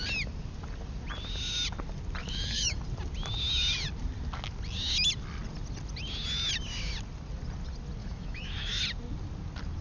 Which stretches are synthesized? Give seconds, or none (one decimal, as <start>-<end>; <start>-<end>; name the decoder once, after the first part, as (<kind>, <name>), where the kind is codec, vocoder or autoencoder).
2.2-2.8 (autoencoder, DAC-VAE); 8.0-8.8